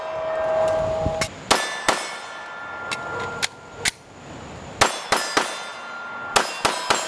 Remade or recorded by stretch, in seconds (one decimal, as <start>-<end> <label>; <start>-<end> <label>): 0.0-7.1 recorded